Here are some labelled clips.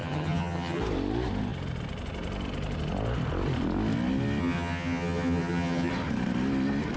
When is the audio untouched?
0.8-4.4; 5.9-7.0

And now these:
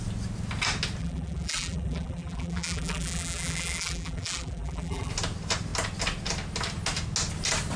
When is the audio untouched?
0.0-1.0; 5.1-7.8